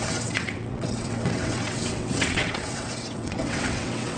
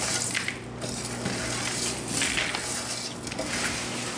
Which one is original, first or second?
second